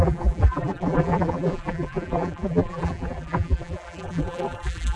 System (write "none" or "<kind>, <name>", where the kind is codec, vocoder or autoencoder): vocoder, BigVGAN v2